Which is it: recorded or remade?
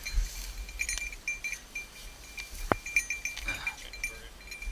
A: recorded